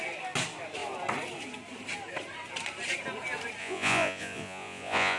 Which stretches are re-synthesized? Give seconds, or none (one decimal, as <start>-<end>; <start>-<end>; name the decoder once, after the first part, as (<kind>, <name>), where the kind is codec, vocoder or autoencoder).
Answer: 3.6-5.2 (vocoder, Vocos)